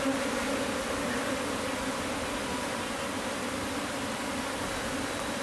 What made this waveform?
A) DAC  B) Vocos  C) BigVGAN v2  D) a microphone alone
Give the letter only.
D